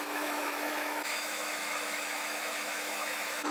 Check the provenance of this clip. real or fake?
fake